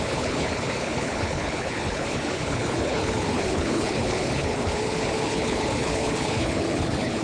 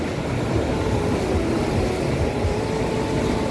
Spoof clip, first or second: first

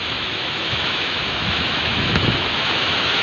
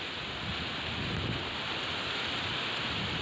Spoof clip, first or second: first